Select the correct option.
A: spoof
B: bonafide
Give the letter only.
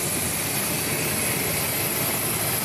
B